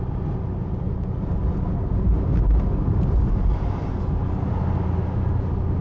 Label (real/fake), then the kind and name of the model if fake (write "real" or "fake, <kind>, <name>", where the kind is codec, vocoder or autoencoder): real